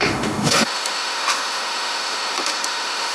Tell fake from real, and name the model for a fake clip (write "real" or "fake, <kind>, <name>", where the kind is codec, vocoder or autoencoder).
fake, autoencoder, DAC-VAE